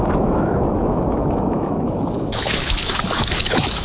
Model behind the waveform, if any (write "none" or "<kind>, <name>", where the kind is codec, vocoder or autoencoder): autoencoder, DAC-VAE